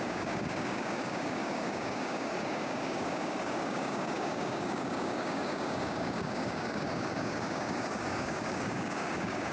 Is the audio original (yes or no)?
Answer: no